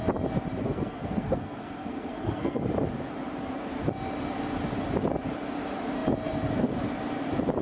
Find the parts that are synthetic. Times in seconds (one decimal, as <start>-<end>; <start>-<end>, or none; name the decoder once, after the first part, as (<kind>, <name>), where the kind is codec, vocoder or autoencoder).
0.6-2.6 (codec, SNAC)